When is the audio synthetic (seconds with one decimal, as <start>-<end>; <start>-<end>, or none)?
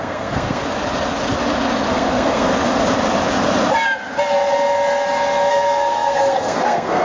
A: 0.0-0.6; 1.9-2.5; 5.5-7.0